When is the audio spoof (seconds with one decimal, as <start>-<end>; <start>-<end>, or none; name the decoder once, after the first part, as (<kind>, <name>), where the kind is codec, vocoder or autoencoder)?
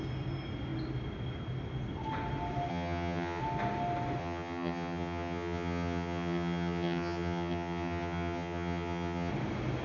2.7-3.4 (vocoder, HiFi-GAN); 4.2-9.3